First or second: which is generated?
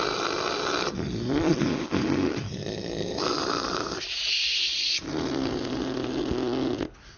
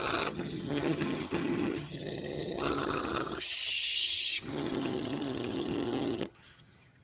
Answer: second